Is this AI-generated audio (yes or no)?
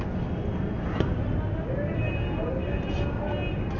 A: no